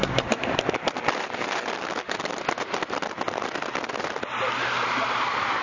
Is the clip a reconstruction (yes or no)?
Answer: no